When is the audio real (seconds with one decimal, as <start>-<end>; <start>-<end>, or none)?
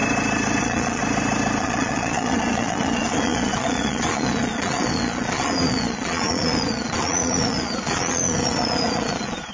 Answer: 0.0-0.6; 1.0-1.6